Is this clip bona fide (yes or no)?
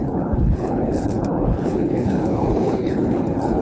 no